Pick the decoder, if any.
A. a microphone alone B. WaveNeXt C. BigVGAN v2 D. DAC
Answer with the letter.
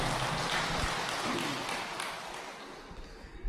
A